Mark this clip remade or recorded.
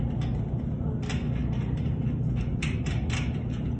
recorded